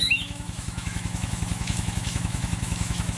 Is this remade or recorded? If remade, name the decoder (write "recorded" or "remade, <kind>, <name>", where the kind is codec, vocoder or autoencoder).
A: remade, autoencoder, DAC-VAE